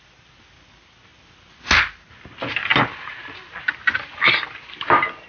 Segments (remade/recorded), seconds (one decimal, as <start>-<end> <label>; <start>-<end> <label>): 0.0-5.3 recorded